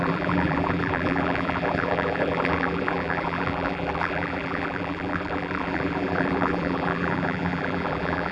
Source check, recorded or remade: remade